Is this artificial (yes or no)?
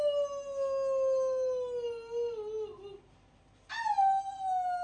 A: no